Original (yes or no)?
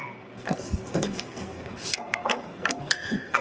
no